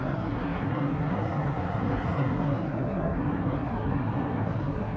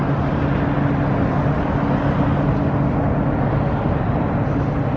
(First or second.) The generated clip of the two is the first